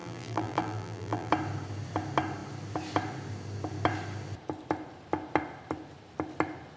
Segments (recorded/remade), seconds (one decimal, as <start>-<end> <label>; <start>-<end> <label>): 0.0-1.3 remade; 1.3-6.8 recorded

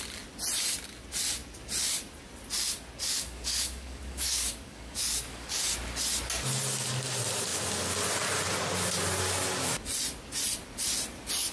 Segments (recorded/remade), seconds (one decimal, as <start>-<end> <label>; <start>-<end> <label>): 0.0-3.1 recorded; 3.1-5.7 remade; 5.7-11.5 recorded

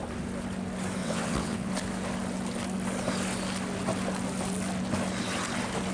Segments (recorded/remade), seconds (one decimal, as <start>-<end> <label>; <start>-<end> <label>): 0.0-1.0 recorded; 1.0-1.7 remade; 1.7-5.9 recorded

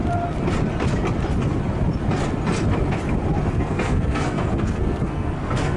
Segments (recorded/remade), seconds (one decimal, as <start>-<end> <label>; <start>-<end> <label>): 0.0-3.5 recorded; 3.5-5.8 remade

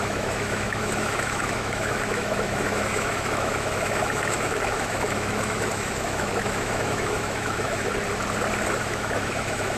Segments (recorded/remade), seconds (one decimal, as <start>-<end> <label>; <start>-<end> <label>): 0.0-7.9 remade; 7.9-8.8 recorded; 8.8-9.8 remade

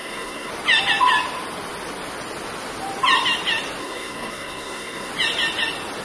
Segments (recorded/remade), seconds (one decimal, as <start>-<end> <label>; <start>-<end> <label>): 0.0-0.5 remade; 0.5-3.8 recorded; 3.8-5.1 remade; 5.1-6.0 recorded